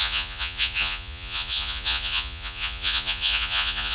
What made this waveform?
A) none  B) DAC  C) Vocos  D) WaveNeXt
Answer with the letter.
C